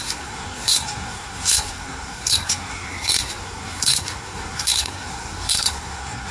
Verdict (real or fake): fake